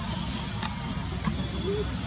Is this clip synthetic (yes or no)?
no